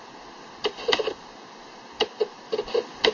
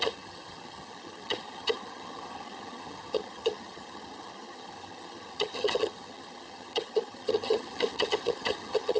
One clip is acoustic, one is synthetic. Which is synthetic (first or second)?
second